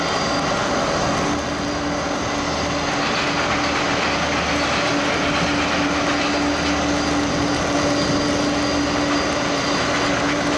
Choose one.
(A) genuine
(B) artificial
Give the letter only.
A